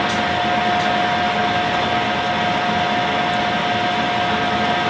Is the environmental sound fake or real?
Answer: real